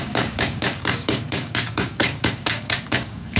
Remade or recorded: remade